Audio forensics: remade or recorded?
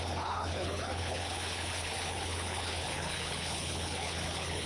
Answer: remade